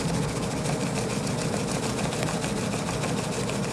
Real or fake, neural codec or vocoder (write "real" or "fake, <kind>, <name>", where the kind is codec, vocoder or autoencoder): real